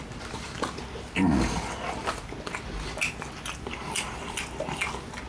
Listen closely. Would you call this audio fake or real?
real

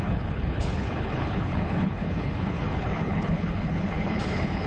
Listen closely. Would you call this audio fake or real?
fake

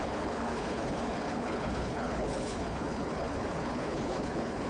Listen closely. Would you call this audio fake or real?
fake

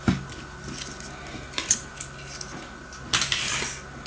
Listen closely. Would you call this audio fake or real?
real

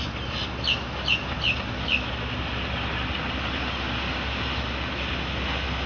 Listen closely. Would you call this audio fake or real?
real